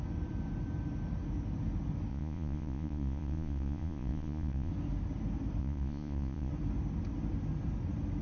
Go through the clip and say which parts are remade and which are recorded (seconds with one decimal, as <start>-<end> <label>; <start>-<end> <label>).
0.0-2.1 recorded; 2.1-4.7 remade; 4.7-5.6 recorded; 5.6-6.5 remade; 6.5-8.2 recorded